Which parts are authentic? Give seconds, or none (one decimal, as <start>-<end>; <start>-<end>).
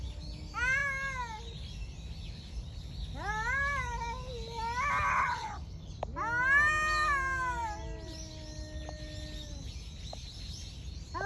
0.0-5.1; 5.9-11.3